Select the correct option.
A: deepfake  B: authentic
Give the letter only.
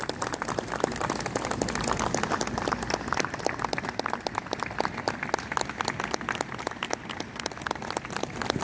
B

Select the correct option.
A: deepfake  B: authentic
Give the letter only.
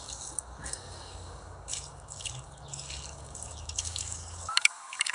A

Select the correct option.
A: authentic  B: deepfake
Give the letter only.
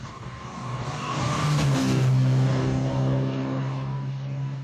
B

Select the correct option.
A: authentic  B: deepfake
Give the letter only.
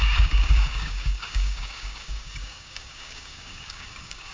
B